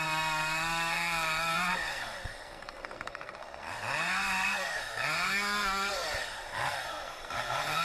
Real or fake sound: fake